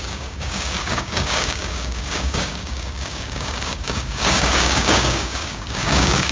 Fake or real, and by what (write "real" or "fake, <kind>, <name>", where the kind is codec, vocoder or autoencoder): fake, codec, DAC